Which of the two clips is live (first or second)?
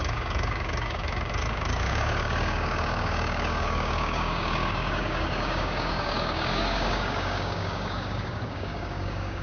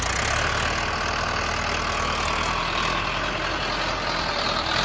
second